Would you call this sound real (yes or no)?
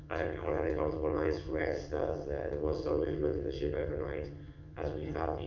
no